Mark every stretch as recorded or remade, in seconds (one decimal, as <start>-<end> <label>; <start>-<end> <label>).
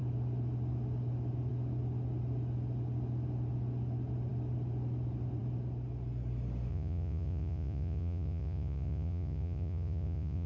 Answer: 0.0-6.7 recorded; 6.7-10.5 remade